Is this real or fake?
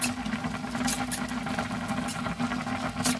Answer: real